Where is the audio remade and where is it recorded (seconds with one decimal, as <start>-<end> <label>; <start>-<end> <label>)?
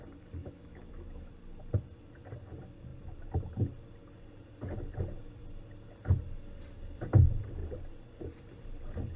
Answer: 0.0-0.4 recorded; 0.4-1.3 remade; 1.3-9.2 recorded